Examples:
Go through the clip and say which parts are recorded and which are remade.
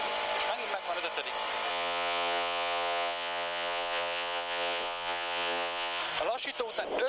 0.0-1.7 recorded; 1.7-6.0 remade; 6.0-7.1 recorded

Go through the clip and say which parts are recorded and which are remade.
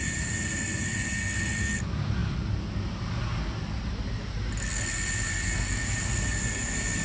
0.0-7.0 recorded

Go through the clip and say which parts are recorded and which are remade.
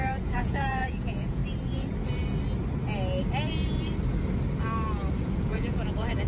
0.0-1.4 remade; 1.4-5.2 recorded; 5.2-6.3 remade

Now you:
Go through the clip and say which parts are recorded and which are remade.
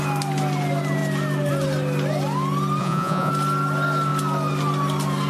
0.0-2.8 recorded; 2.8-3.3 remade; 3.3-5.3 recorded